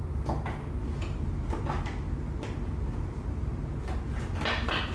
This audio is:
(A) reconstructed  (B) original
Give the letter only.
B